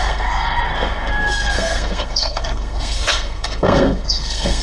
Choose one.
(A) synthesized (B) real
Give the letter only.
A